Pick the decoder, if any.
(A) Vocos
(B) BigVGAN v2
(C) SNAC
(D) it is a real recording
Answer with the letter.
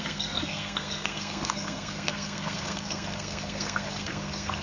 C